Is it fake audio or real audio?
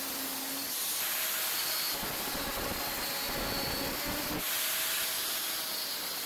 real